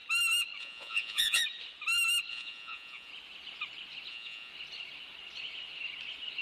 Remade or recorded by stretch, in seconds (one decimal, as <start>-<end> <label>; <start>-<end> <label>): 0.0-0.6 recorded; 0.6-1.4 remade; 1.4-2.3 recorded; 2.3-3.1 remade; 3.1-4.1 recorded; 4.1-4.5 remade; 4.5-6.4 recorded